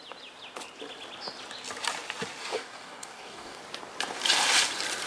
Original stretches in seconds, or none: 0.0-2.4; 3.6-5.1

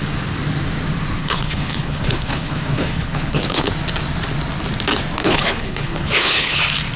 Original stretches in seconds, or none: 0.0-1.2; 3.7-5.2; 6.6-7.0

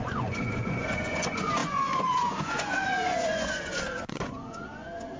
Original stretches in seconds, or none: none

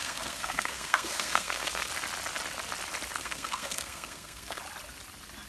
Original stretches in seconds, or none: 1.9-3.2; 4.6-5.5

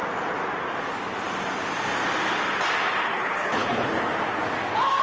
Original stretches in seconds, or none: 0.0-3.0; 4.1-5.0

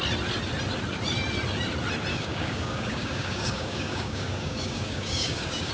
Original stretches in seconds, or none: 0.0-2.1

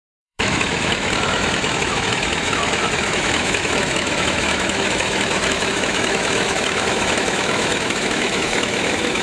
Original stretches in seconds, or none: none

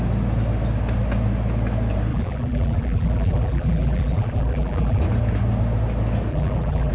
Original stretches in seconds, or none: 0.0-2.1; 5.0-6.3